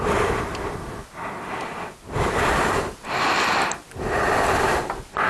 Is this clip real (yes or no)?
yes